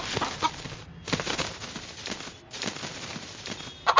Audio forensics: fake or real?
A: real